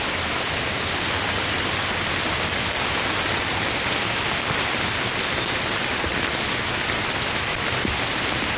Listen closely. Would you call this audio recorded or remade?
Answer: recorded